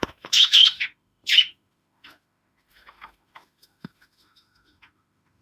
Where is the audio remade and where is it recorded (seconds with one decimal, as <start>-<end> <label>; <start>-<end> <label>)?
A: 0.0-5.4 remade